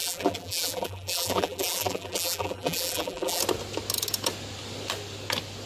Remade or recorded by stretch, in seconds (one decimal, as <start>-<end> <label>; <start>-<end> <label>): 0.0-3.4 remade; 3.4-5.7 recorded